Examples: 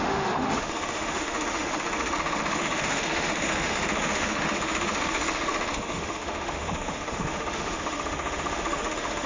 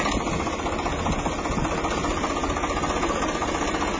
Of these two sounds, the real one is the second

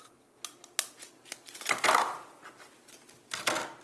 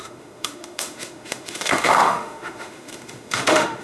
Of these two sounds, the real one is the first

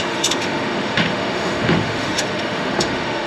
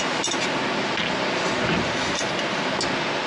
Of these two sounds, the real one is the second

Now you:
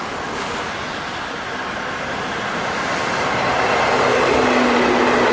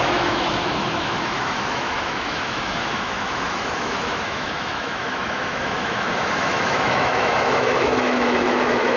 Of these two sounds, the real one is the first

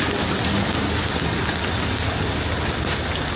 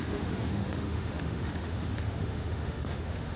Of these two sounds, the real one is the first